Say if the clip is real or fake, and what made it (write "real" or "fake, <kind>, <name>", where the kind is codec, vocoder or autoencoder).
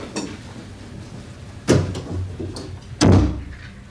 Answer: real